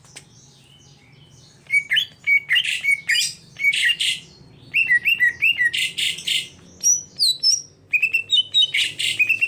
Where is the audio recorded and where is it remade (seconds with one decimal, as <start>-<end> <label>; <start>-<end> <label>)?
0.0-9.5 recorded